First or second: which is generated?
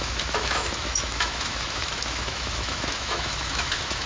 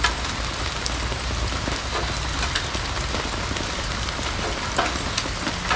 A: first